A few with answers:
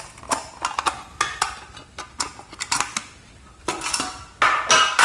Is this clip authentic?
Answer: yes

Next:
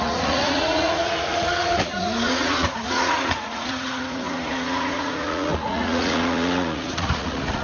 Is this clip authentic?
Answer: no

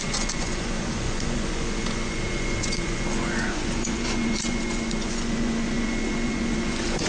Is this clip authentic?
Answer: no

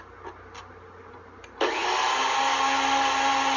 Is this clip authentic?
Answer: yes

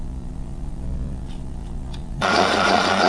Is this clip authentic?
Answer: no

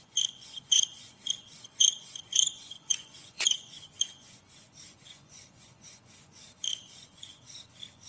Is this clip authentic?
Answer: no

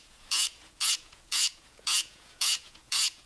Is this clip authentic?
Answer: no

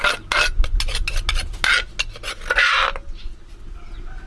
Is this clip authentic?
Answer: yes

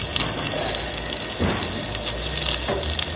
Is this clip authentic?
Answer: yes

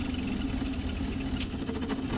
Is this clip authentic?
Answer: yes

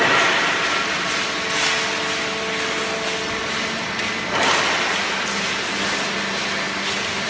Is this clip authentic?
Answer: yes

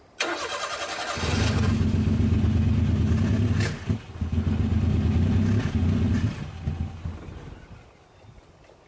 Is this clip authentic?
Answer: yes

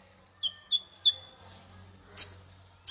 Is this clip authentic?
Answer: yes